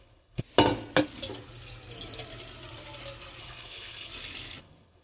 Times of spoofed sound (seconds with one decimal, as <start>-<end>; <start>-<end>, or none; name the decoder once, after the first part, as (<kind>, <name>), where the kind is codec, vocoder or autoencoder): 0.0-0.4 (codec, HILCodec); 3.4-4.1; 4.6-5.0